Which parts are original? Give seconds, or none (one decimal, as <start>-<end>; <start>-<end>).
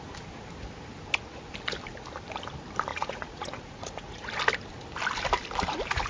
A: 0.0-2.9; 4.3-6.1